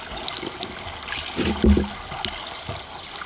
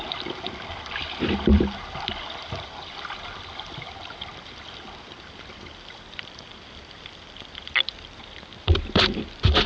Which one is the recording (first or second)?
first